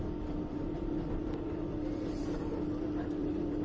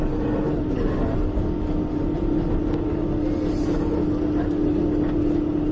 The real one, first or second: second